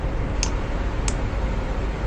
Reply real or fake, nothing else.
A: real